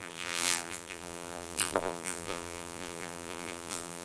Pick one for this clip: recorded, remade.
remade